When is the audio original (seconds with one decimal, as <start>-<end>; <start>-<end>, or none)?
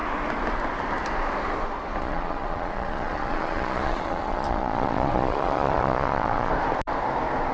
0.0-2.0; 6.5-7.5